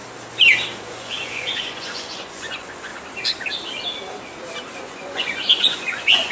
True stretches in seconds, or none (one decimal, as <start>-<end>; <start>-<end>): 0.0-0.8; 2.9-4.8